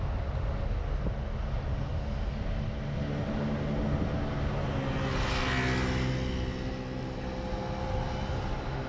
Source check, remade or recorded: recorded